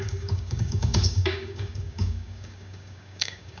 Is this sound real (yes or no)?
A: no